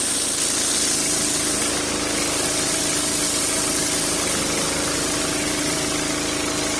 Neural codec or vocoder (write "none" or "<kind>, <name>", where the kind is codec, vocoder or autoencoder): none